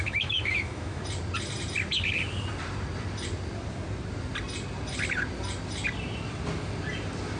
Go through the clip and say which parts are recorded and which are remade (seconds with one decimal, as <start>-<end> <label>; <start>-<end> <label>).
0.0-1.0 remade; 1.0-7.4 recorded

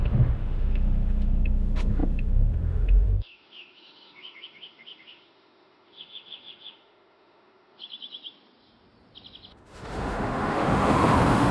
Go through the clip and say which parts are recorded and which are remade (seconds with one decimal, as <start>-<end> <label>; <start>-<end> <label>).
0.0-7.8 remade; 7.8-9.5 recorded; 9.5-11.5 remade